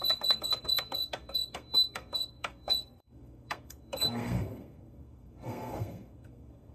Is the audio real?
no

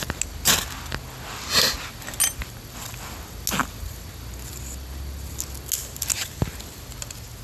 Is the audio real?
yes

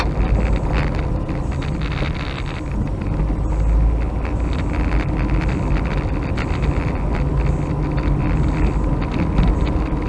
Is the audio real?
yes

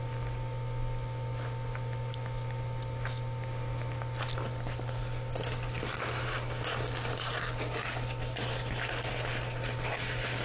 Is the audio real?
yes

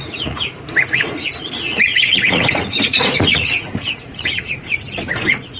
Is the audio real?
no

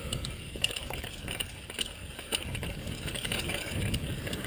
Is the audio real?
no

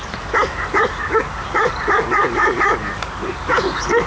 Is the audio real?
no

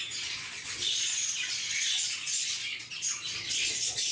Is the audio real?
no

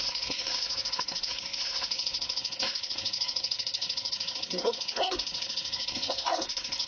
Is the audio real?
no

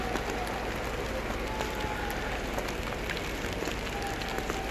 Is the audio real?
yes